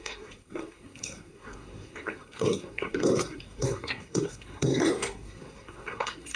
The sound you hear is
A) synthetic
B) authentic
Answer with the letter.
A